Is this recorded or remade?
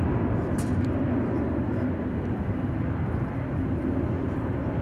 recorded